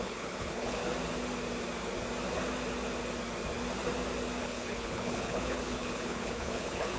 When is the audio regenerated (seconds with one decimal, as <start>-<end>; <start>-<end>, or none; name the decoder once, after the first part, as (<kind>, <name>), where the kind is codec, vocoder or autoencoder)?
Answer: 0.0-0.8 (codec, HILCodec); 4.4-7.0